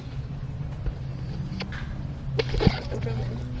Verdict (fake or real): real